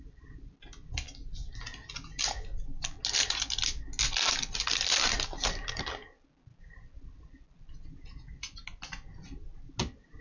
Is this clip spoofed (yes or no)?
no